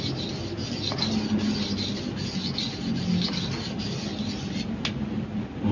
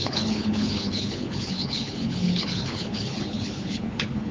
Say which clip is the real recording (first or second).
first